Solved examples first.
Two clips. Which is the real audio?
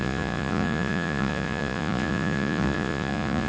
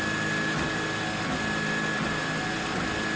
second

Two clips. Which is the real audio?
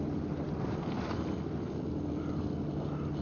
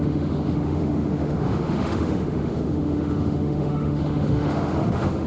first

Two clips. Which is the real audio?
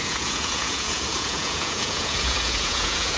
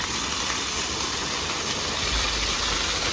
second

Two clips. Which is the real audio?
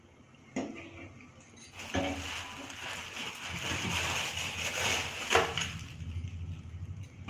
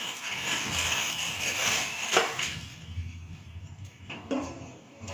first